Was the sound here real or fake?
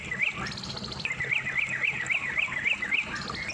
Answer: real